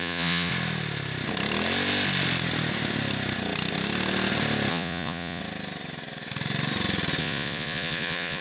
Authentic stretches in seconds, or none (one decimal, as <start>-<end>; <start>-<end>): 0.5-4.7; 5.4-7.2